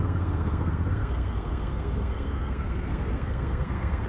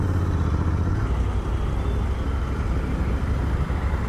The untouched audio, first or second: second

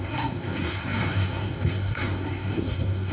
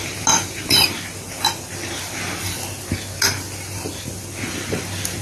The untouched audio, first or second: second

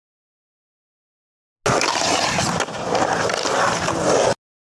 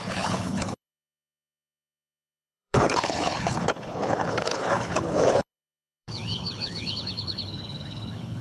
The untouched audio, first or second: first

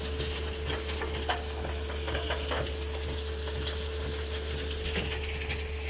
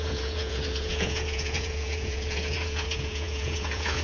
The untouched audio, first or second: first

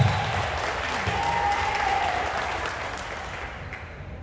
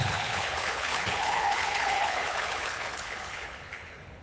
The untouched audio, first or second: first